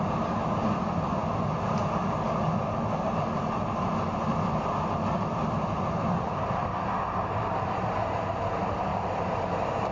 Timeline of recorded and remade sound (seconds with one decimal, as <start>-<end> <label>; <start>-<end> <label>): 0.0-9.9 recorded